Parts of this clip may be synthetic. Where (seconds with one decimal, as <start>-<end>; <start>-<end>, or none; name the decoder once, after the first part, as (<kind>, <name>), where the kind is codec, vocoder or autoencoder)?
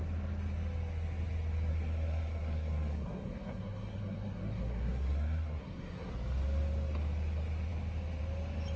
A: 1.7-6.1 (codec, SNAC)